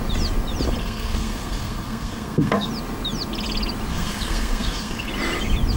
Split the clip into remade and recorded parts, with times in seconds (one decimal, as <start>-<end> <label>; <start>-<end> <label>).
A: 0.0-0.8 recorded; 0.8-2.7 remade; 2.7-3.9 recorded; 3.9-5.1 remade; 5.1-5.8 recorded